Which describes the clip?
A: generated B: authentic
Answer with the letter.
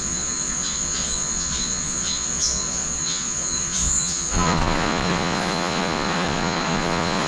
A